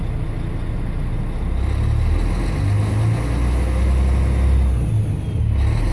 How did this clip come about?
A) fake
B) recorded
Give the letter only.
B